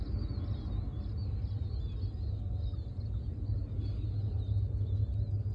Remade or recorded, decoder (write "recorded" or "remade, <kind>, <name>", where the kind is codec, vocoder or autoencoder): recorded